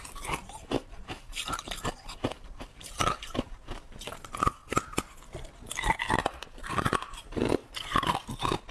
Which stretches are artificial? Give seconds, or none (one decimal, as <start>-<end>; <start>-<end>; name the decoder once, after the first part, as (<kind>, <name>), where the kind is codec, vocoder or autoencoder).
0.0-4.6 (vocoder, BigVGAN v2); 6.0-7.5